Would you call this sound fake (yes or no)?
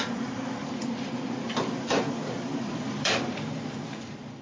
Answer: yes